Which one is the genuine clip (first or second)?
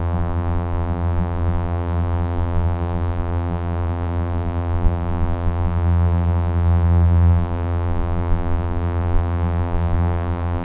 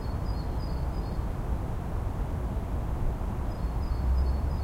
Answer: second